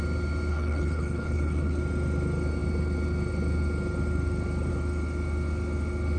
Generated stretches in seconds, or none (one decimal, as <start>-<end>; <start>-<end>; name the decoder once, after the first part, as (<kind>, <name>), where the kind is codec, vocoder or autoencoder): 0.5-1.8 (codec, HILCodec)